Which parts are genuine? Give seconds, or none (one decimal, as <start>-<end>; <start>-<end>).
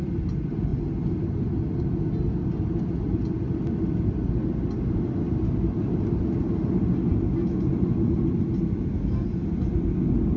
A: 0.0-10.4